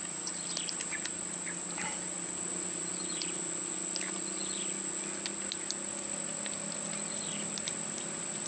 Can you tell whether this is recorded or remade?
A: recorded